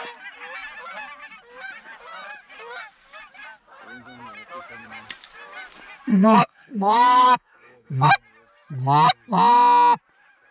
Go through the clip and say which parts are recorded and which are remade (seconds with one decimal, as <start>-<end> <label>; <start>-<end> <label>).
0.0-6.1 recorded; 6.1-8.1 remade; 8.1-10.5 recorded